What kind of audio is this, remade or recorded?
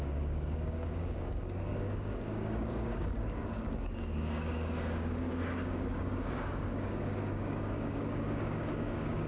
remade